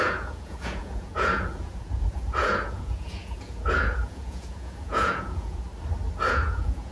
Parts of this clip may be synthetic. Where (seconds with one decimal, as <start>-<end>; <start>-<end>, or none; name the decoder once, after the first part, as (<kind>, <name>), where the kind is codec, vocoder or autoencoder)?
0.0-5.7 (vocoder, Vocos); 6.3-6.9